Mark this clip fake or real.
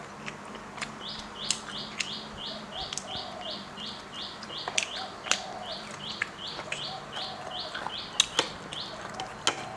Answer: real